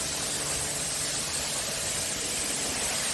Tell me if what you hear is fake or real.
real